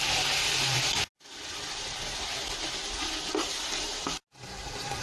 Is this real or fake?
real